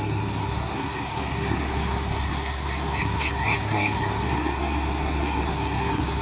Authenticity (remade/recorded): remade